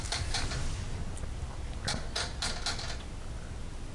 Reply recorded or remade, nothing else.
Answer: recorded